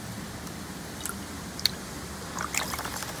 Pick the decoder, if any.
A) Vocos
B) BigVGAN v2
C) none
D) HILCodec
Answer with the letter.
C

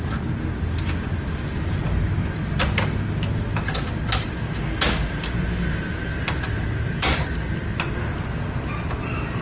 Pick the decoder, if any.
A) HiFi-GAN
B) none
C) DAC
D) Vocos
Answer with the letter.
B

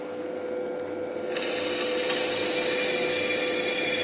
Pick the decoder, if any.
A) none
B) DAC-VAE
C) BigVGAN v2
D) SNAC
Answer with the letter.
A